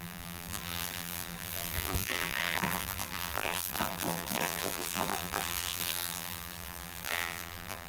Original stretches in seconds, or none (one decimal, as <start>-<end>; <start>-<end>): none